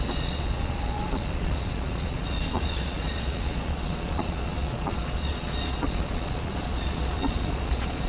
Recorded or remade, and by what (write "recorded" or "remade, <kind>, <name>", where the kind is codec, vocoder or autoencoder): remade, vocoder, Vocos